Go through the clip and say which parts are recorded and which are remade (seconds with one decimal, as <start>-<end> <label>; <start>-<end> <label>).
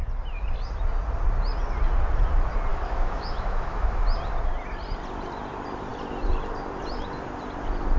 0.0-2.7 recorded; 2.7-4.0 remade; 4.0-8.0 recorded